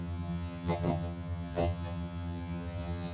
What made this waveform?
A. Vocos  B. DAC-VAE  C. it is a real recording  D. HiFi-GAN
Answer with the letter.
D